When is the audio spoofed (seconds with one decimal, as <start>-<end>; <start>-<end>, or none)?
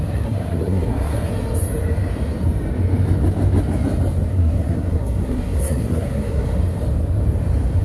0.0-1.3; 4.3-6.6